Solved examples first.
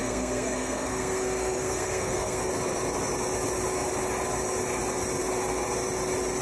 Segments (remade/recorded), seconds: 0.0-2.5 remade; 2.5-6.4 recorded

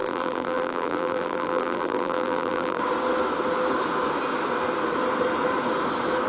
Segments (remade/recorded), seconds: 0.0-2.8 remade; 2.8-6.3 recorded